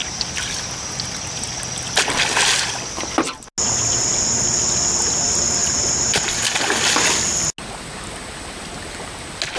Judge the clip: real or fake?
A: real